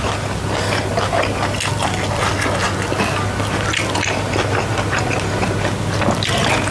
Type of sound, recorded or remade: recorded